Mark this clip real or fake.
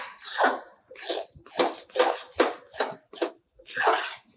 real